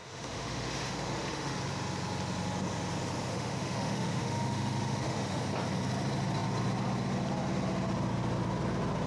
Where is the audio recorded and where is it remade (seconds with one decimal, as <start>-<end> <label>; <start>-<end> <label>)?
0.0-1.5 remade; 1.5-3.3 recorded; 3.3-5.4 remade; 5.4-9.1 recorded